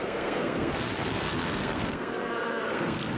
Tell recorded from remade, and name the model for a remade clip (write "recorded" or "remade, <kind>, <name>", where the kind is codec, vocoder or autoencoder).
remade, codec, SNAC